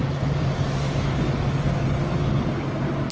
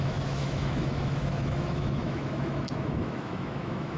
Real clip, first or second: first